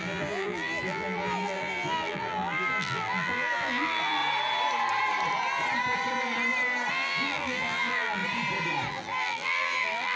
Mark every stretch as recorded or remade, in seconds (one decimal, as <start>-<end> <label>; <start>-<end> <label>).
0.0-4.2 remade; 4.2-6.9 recorded; 6.9-8.2 remade; 8.2-8.9 recorded; 8.9-10.2 remade